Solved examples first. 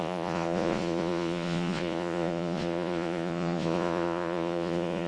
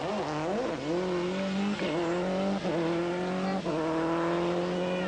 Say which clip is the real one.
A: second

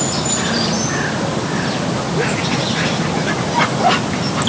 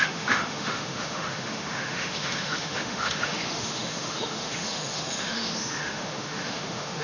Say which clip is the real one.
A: first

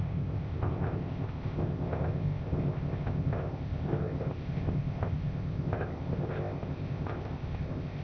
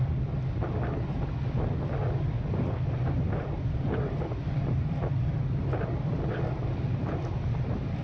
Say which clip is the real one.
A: second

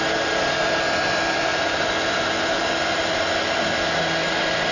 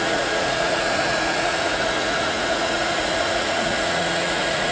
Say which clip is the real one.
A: first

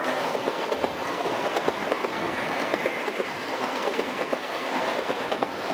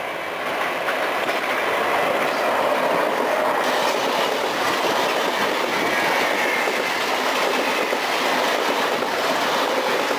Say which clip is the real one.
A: second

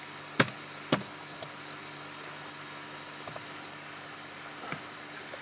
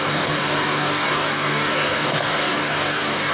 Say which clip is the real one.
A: first